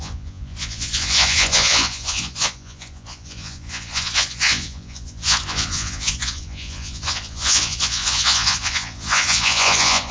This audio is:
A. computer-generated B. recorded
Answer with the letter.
A